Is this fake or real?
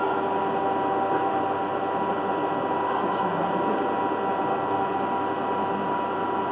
real